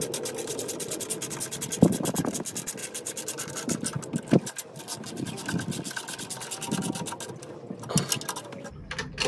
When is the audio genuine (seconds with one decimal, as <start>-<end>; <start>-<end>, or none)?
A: 0.0-2.8; 4.8-9.3